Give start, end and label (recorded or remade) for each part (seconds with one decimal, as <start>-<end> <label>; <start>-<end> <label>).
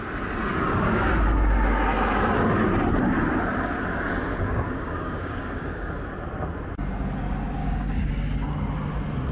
0.0-0.5 recorded; 0.5-1.1 remade; 1.1-4.2 recorded; 4.2-5.9 remade; 5.9-7.6 recorded; 7.6-8.1 remade; 8.1-9.3 recorded